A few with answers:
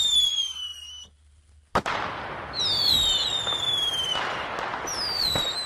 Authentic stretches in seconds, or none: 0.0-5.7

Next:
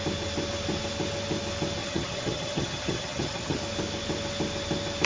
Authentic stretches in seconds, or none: 0.0-1.8; 3.6-5.1

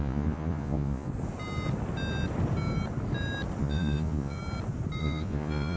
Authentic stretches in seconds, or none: 1.1-3.6; 4.4-5.0

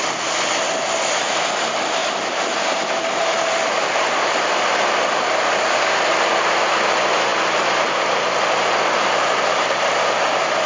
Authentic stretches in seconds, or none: none

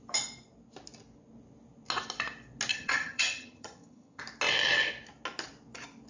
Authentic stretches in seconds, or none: 0.0-2.7; 4.2-6.1

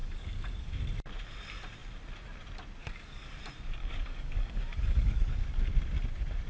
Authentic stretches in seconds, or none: 0.8-2.8; 3.4-3.8; 5.3-6.5

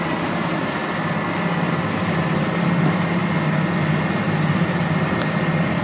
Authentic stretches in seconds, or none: 0.8-1.7; 3.2-4.1

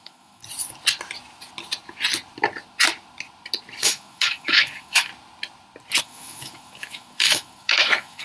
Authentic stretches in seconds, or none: 0.4-3.8; 5.1-6.0